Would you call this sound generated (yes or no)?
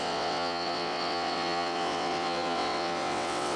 yes